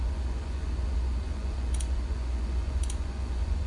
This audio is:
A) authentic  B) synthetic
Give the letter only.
B